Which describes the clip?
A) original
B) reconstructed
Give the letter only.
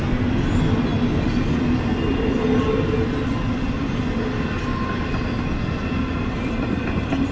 A